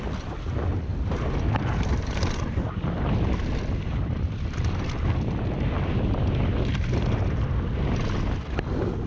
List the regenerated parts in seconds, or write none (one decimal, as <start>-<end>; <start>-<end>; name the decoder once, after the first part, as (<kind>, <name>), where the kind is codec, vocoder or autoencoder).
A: none